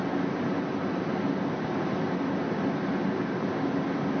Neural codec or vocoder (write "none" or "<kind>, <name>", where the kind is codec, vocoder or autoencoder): none